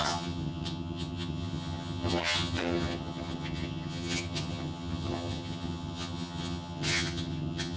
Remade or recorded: remade